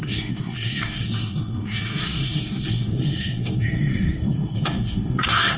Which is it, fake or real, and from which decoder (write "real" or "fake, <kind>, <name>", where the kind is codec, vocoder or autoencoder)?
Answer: fake, codec, SNAC